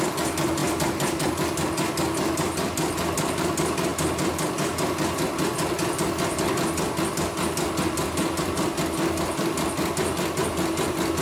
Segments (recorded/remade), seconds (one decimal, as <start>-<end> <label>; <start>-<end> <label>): 0.0-0.6 recorded; 0.6-1.3 remade; 1.3-11.2 recorded